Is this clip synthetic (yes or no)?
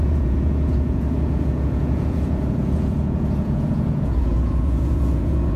yes